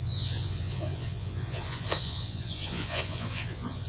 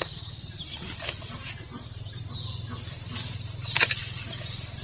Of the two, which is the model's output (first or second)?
first